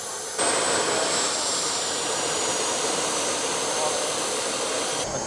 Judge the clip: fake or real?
fake